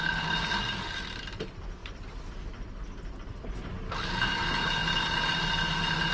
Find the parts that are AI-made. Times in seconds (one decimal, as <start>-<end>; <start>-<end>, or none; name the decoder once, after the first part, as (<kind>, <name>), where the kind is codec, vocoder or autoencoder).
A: none